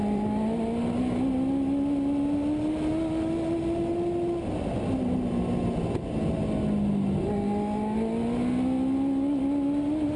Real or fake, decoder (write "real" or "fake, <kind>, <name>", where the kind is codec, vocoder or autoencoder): real